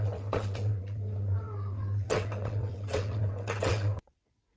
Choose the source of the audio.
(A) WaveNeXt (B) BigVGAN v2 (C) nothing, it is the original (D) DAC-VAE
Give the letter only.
A